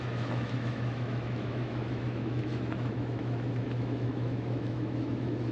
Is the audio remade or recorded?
remade